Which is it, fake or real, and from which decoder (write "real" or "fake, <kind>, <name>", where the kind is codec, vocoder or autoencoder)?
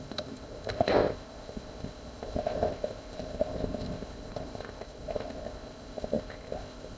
fake, codec, ZipCodec